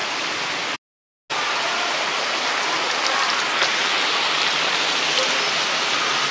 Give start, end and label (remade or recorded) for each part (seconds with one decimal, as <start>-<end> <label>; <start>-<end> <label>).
0.0-6.3 recorded